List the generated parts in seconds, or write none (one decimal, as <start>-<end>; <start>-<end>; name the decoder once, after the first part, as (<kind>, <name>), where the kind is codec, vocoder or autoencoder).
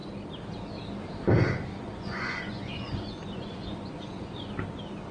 1.7-4.5 (vocoder, Vocos)